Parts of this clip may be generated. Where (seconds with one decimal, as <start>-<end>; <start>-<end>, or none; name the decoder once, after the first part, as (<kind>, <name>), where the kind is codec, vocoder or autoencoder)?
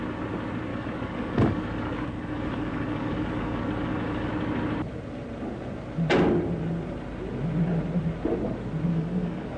0.7-4.3 (codec, DAC); 8.9-9.6